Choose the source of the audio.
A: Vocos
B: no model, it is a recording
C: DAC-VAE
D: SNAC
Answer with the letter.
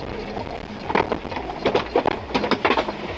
B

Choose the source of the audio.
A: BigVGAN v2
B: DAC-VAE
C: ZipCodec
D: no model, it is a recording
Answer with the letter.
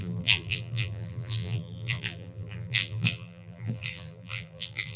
A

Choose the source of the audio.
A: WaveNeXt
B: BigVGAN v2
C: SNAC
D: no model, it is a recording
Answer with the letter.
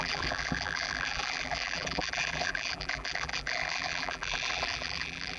B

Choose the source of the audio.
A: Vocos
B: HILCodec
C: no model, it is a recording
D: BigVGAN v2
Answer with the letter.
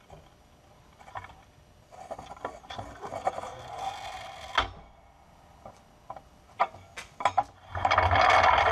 C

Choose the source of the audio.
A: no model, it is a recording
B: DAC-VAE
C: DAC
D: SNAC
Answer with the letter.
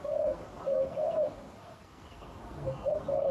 D